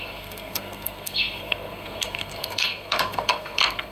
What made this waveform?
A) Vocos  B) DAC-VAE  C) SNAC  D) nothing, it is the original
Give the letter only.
C